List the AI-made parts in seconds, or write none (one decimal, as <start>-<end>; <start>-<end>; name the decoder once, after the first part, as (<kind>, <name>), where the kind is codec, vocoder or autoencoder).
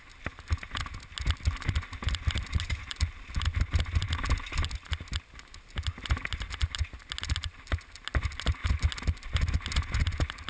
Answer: none